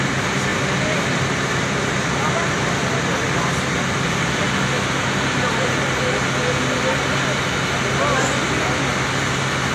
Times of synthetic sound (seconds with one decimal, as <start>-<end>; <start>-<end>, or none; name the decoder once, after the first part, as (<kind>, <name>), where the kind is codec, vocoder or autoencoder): none